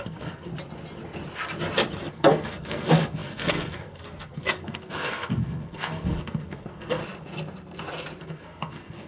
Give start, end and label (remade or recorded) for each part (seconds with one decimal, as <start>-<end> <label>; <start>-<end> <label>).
0.0-0.5 remade; 0.5-2.1 recorded; 2.1-7.0 remade; 7.0-8.2 recorded; 8.2-9.1 remade